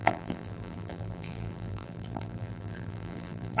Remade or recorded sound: remade